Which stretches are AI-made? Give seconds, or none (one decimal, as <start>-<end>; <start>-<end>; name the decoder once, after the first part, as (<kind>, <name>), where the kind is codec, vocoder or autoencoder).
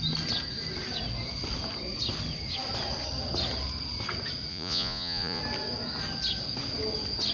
4.5-5.4 (vocoder, Vocos)